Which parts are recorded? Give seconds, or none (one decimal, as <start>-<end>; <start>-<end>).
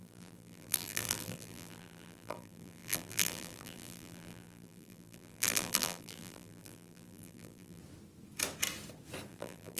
7.8-9.3